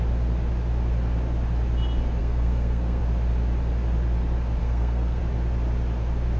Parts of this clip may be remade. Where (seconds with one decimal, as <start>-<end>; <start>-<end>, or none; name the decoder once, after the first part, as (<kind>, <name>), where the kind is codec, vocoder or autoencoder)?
2.2-3.0 (codec, SNAC); 4.6-5.2